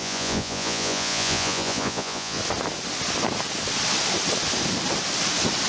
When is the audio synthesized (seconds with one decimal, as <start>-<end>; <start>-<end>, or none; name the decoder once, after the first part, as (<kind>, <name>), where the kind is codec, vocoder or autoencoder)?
0.0-2.4 (vocoder, Vocos)